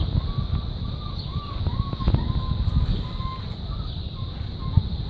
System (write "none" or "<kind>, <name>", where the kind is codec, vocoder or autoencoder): none